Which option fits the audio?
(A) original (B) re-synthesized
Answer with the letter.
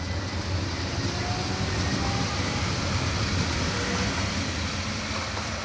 A